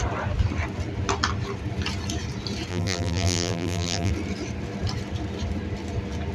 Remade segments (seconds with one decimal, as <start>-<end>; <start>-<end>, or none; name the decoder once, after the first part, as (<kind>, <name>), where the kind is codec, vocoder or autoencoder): 2.7-4.1 (vocoder, BigVGAN v2)